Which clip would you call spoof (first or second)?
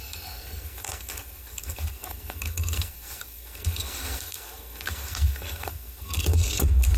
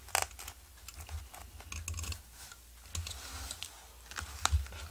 first